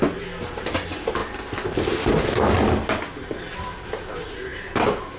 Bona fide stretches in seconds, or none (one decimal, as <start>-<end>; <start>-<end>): 0.0-5.2